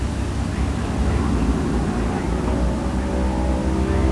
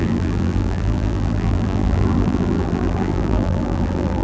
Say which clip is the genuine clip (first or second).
first